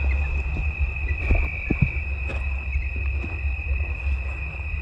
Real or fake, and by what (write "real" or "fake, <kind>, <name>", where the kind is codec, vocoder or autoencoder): real